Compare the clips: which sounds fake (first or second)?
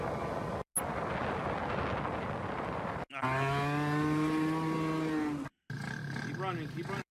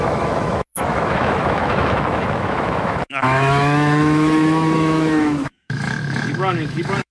second